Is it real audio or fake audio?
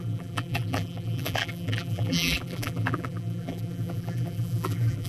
fake